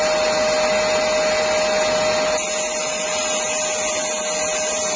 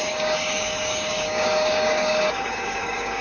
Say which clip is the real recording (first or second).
first